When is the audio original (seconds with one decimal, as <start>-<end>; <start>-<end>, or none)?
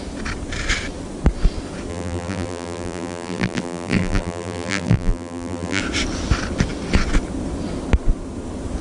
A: 0.0-1.9; 5.8-8.8